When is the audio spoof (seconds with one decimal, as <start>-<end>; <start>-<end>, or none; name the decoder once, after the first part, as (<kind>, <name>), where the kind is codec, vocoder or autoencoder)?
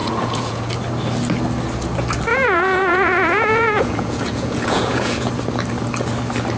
0.0-0.7 (vocoder, Vocos); 2.3-5.3